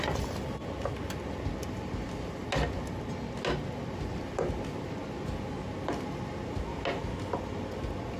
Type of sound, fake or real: real